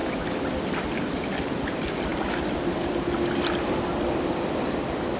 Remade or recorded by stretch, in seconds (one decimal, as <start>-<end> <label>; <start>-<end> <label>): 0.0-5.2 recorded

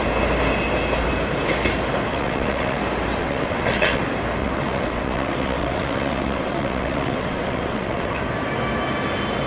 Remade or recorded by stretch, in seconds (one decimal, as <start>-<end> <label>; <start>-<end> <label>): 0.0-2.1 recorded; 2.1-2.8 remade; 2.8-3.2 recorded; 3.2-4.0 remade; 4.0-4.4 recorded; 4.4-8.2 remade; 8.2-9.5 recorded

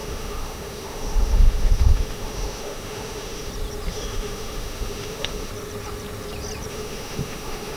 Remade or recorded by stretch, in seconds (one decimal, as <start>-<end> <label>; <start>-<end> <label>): 0.0-3.5 remade; 3.5-3.9 recorded; 3.9-5.5 remade; 5.5-6.7 recorded; 6.7-7.8 remade

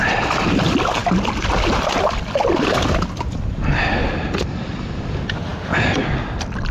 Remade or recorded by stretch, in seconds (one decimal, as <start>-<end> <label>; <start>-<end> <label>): 0.0-6.7 recorded

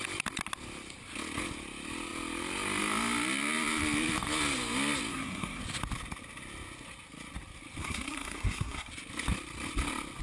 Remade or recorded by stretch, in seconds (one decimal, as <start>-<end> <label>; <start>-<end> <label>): 0.0-5.1 recorded; 5.1-5.6 remade; 5.6-7.8 recorded; 7.8-8.9 remade; 8.9-10.2 recorded

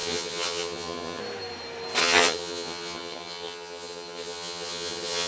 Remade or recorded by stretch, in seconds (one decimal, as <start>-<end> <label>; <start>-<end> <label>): 0.0-1.2 remade; 1.2-2.0 recorded; 2.0-5.3 remade

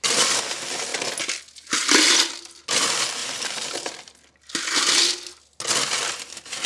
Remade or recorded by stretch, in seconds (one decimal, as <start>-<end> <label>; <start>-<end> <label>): 0.0-3.2 recorded; 3.2-4.1 remade; 4.1-6.7 recorded